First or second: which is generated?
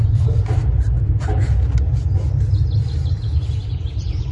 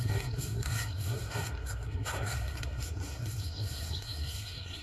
second